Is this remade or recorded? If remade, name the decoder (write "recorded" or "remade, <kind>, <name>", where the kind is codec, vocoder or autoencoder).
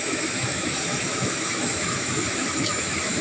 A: remade, autoencoder, DAC-VAE